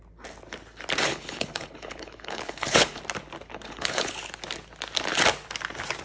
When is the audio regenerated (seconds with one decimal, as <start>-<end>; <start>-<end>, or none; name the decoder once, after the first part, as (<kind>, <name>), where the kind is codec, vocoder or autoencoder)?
1.1-3.0 (codec, HILCodec); 3.5-4.2